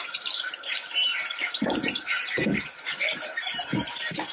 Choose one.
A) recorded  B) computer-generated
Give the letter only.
B